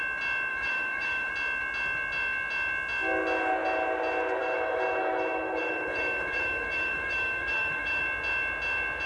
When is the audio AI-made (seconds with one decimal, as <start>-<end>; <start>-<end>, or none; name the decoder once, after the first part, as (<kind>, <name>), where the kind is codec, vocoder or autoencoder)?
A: 0.5-1.3 (autoencoder, DAC-VAE); 4.4-8.0